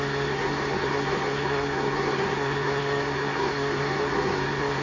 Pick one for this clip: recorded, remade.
remade